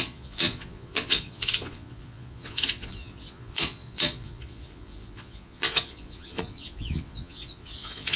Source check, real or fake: fake